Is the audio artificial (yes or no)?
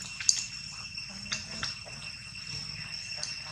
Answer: no